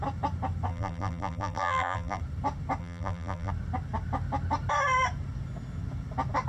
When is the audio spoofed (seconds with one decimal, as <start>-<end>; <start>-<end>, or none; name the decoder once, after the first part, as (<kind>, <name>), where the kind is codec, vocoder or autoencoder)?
0.7-2.2 (vocoder, BigVGAN v2); 2.8-3.5